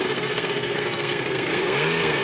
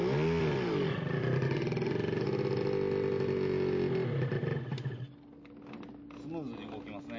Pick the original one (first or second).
second